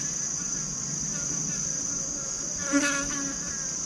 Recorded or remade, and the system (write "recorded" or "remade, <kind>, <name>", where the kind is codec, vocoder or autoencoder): recorded